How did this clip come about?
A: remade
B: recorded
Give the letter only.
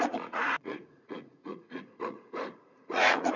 A